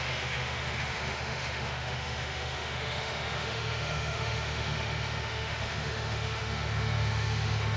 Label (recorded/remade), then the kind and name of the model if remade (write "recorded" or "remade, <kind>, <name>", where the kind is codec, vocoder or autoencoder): remade, autoencoder, DAC-VAE